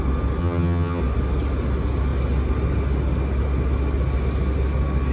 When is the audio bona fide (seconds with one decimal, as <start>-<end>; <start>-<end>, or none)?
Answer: 0.0-0.4; 1.0-5.1